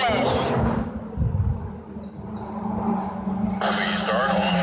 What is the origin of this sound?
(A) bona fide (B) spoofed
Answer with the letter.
A